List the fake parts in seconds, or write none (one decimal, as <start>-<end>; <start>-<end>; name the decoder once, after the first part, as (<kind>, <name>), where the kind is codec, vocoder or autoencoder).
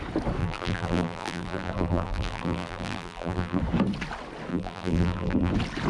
0.4-3.6 (vocoder, BigVGAN v2); 4.5-5.5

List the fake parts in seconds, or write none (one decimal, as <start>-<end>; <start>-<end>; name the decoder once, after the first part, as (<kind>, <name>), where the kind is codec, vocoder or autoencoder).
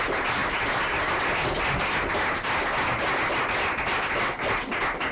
none